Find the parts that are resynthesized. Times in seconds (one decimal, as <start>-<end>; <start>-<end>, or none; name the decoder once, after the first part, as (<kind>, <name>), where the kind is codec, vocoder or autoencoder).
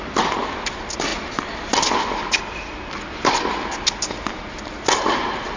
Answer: none